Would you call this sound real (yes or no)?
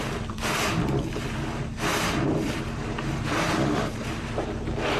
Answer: no